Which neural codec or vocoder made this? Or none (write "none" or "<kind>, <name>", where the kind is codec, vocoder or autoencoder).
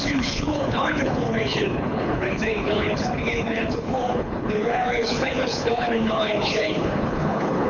codec, HILCodec